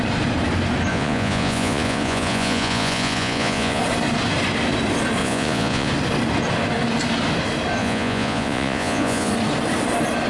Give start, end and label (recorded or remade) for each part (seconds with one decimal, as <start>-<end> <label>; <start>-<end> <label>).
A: 0.0-0.9 recorded; 0.9-3.8 remade; 3.8-5.2 recorded; 5.2-5.9 remade; 5.9-7.8 recorded; 7.8-9.3 remade; 9.3-10.3 recorded